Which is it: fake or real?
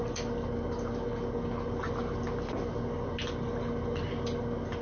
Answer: real